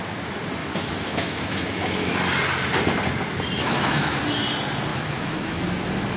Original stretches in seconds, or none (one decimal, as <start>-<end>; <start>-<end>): 0.0-0.6; 2.1-3.6; 4.2-4.9; 5.6-6.2